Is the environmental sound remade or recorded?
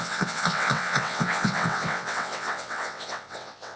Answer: remade